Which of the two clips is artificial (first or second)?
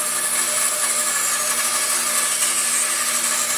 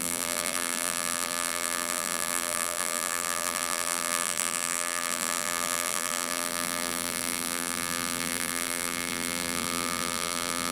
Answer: second